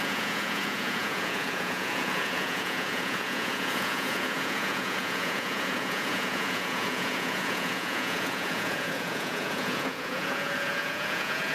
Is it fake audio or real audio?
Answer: fake